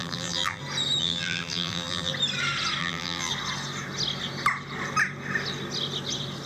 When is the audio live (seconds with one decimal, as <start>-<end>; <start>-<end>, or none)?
0.6-1.0; 2.1-2.8; 3.3-6.5